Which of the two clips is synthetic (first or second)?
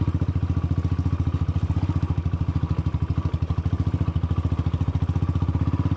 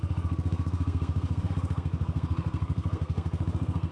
second